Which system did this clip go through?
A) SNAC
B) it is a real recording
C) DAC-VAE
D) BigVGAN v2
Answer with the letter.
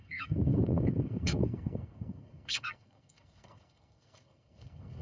A